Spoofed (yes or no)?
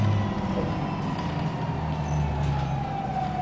no